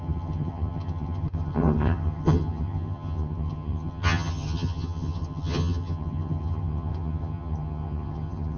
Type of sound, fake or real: fake